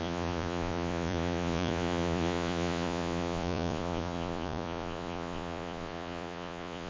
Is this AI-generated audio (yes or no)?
yes